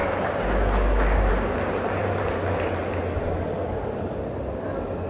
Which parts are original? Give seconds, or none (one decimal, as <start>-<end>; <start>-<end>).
1.3-5.1